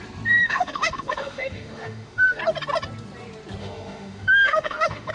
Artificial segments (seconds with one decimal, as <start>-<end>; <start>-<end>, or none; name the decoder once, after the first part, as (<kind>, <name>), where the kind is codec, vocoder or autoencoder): 0.4-2.4 (autoencoder, DAC-VAE); 3.6-5.1